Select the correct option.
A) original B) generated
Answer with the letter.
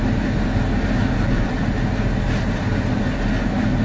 A